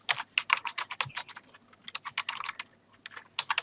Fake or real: real